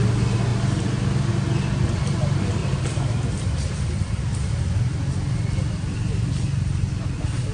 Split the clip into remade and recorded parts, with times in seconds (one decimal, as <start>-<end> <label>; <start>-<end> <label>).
0.0-2.6 recorded; 2.6-4.6 remade; 4.6-7.5 recorded